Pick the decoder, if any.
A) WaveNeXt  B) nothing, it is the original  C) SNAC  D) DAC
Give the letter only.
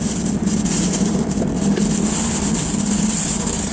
B